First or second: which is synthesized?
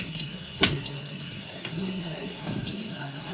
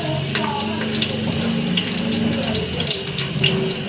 first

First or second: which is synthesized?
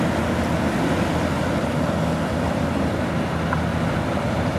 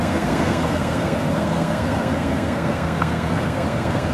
second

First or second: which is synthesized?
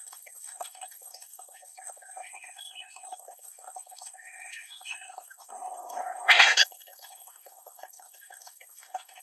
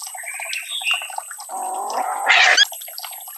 first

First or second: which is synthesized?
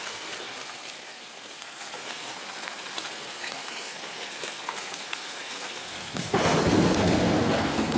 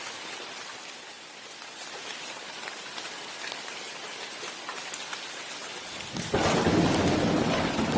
first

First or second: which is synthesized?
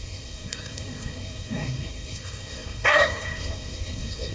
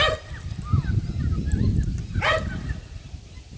first